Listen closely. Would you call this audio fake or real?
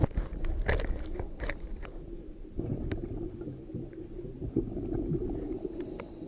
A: real